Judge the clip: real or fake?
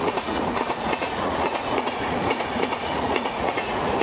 fake